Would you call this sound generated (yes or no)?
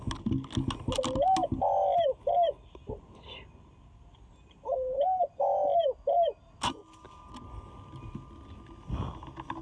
no